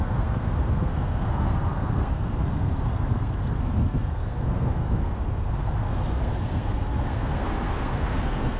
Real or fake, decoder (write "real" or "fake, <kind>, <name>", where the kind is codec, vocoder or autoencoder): fake, codec, SNAC